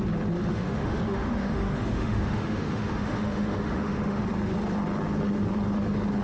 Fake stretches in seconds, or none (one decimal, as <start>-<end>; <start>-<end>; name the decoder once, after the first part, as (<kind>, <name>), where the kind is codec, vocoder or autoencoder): 0.5-4.2 (autoencoder, DAC-VAE)